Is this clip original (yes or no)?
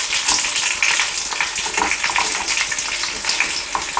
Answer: yes